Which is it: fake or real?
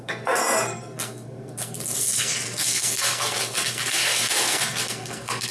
fake